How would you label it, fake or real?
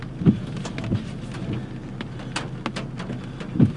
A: real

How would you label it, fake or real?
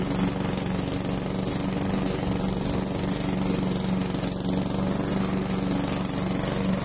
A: real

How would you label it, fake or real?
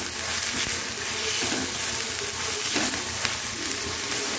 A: real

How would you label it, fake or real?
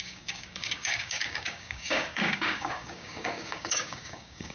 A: fake